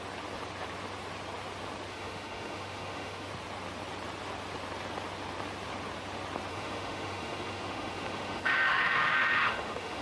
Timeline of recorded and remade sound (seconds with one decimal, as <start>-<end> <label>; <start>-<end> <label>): 0.0-1.9 recorded; 1.9-3.3 remade; 3.3-6.5 recorded; 6.5-10.0 remade